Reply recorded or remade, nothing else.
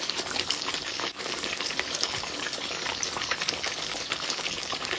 remade